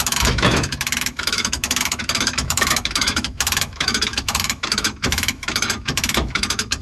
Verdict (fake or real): fake